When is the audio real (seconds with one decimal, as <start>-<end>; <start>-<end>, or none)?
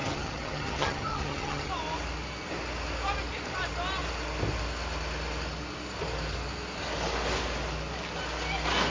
1.7-8.9